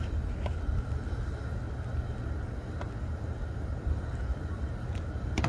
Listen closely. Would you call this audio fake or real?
real